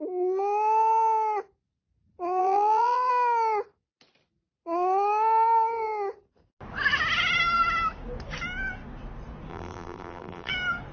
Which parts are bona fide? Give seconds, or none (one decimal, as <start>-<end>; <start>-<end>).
0.0-2.4; 3.1-9.5; 10.5-10.9